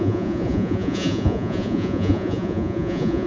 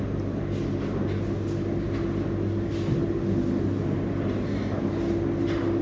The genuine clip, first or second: second